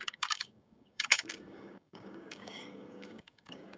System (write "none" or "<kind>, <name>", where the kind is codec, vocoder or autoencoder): codec, DAC